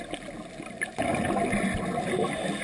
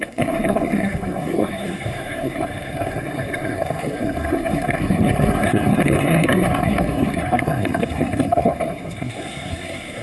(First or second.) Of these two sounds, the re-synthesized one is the second